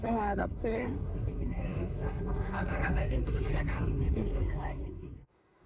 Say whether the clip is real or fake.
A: fake